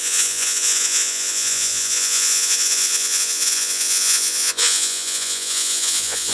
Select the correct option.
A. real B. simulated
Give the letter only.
B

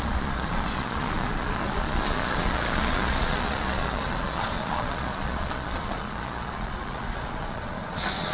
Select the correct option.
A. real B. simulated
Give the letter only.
B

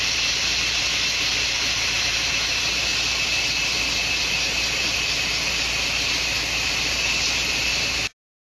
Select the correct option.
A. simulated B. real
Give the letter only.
B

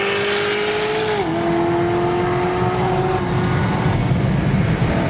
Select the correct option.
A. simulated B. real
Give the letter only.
B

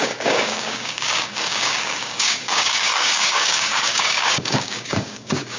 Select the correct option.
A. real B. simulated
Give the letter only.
B